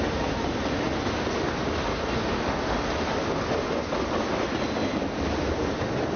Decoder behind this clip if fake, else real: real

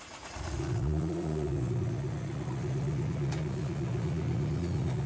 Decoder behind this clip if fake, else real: fake, vocoder, Vocos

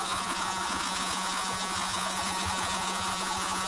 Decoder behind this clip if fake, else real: fake, vocoder, Vocos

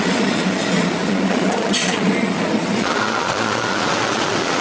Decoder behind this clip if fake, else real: fake, vocoder, Vocos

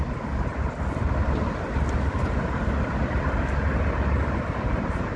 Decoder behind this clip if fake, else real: real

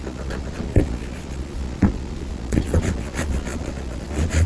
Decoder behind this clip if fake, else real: fake, vocoder, Vocos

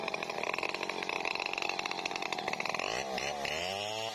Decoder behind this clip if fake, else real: real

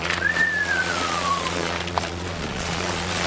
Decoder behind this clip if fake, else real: fake, vocoder, Vocos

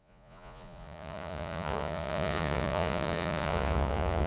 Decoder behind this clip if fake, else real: fake, vocoder, Vocos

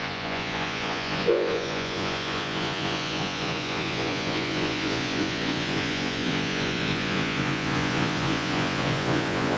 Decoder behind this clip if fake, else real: fake, vocoder, Vocos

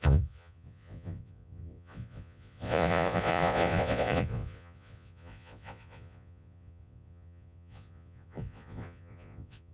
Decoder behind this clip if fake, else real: fake, vocoder, Vocos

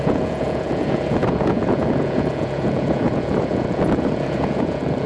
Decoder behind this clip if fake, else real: fake, vocoder, Vocos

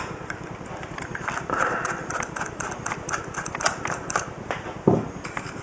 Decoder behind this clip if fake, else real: real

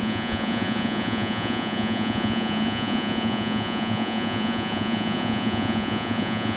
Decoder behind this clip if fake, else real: fake, vocoder, Vocos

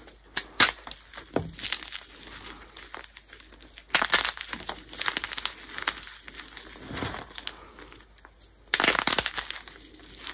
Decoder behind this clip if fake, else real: real